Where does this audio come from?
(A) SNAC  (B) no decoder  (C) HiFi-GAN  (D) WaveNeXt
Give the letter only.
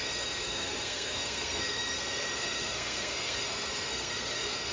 A